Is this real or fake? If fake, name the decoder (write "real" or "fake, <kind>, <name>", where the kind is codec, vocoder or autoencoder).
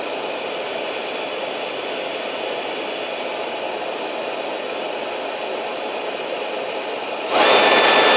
real